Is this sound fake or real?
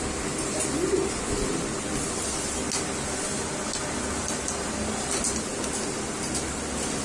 real